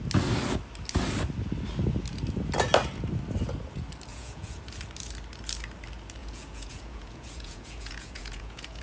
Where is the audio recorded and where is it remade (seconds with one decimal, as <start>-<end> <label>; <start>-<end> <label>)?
0.0-4.1 recorded; 4.1-4.6 remade; 4.6-6.2 recorded; 6.2-8.8 remade